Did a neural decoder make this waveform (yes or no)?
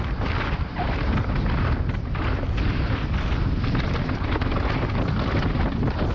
no